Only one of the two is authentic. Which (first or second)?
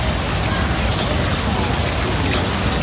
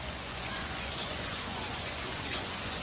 first